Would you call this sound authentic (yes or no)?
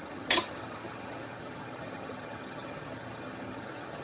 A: no